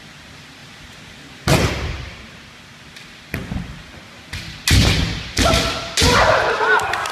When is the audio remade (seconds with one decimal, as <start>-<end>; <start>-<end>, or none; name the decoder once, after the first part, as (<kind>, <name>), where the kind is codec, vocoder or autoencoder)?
0.6-1.7 (vocoder, BigVGAN v2)